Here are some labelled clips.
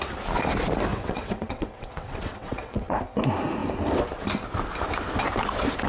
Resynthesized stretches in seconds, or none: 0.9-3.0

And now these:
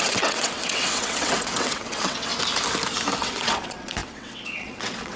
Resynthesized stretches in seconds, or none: 0.0-2.3; 3.2-5.2

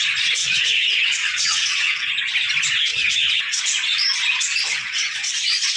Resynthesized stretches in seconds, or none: 0.4-2.1; 2.9-3.6; 4.7-5.3

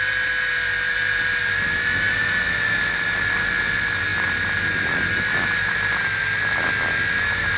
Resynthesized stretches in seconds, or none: none